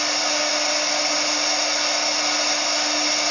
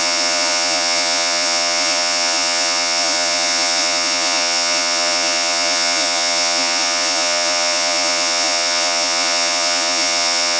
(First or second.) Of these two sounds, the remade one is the second